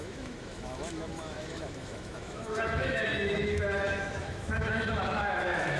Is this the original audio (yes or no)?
no